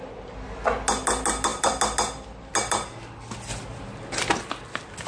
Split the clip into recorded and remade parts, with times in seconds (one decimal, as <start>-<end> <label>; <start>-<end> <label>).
0.0-5.1 recorded